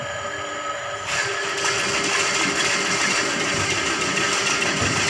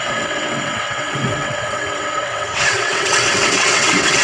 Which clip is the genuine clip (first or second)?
first